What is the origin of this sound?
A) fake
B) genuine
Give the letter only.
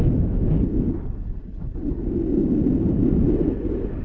B